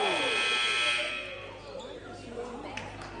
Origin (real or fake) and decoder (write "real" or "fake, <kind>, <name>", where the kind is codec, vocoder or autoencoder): real